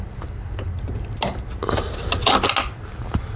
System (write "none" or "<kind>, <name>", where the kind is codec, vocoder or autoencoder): none